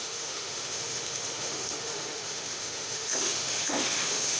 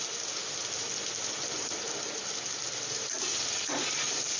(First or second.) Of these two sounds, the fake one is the first